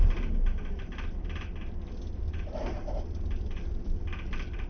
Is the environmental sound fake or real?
real